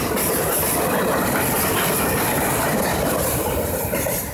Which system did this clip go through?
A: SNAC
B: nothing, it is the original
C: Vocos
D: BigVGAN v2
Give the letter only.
B